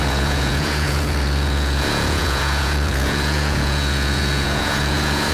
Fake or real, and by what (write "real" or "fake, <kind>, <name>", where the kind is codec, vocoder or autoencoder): fake, vocoder, Vocos